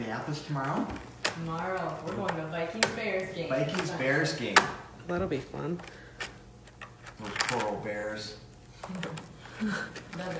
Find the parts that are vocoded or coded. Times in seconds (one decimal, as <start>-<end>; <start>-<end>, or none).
none